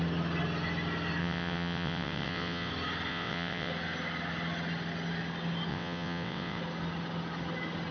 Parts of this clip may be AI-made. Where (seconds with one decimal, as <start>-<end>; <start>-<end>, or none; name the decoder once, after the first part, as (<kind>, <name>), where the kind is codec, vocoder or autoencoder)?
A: 1.2-2.7 (vocoder, WaveNeXt); 3.1-3.7; 5.7-6.6